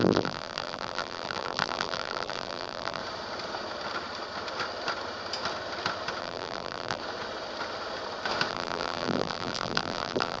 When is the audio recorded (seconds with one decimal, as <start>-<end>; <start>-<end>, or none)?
3.0-6.2; 7.0-8.5